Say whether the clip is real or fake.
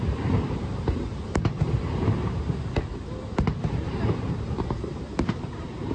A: fake